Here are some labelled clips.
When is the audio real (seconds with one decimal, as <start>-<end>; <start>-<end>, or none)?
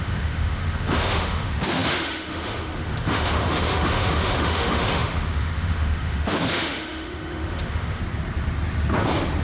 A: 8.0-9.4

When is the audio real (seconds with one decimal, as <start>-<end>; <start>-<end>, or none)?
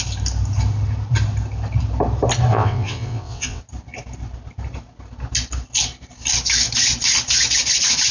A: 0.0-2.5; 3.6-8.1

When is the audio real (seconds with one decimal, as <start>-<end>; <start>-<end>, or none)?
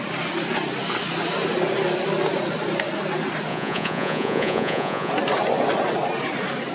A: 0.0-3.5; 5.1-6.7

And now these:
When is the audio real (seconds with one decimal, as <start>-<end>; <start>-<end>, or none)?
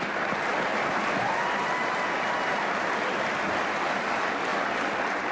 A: 0.0-5.3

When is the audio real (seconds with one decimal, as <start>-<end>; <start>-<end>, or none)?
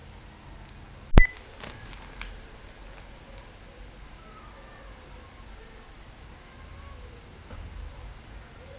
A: 0.0-8.8